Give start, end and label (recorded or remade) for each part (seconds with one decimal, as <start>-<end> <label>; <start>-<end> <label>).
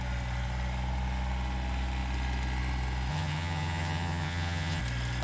0.0-3.1 recorded; 3.1-4.8 remade; 4.8-5.2 recorded